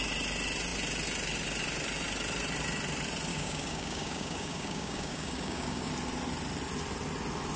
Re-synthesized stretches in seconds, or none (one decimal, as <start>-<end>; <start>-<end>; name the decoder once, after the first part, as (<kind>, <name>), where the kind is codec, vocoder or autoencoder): 3.3-5.9 (codec, DAC)